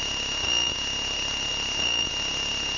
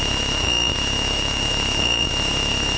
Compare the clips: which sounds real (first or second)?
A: first